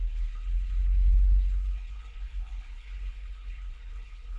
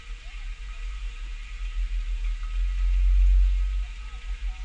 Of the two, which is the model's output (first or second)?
first